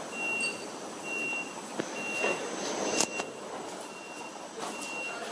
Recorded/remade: recorded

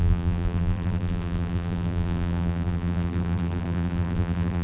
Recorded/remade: remade